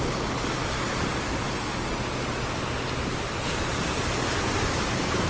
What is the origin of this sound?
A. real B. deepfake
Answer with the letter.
A